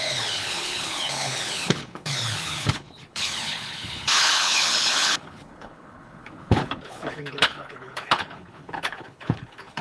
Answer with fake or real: fake